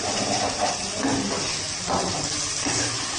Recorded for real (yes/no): yes